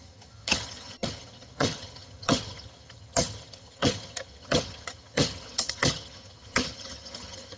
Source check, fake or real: fake